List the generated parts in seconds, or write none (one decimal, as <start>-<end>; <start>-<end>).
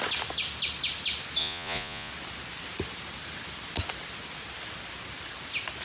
1.4-2.1